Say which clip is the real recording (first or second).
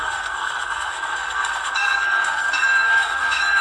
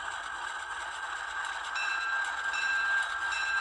second